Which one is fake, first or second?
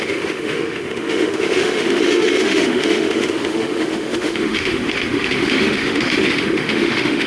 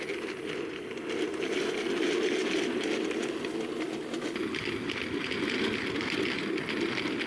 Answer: first